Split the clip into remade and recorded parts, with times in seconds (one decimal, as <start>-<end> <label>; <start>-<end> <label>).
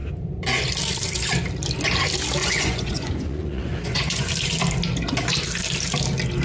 0.0-2.4 recorded; 2.4-4.3 remade; 4.3-6.4 recorded